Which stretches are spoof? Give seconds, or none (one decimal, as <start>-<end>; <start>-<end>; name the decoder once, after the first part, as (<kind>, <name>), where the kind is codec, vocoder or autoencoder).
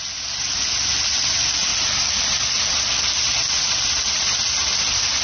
none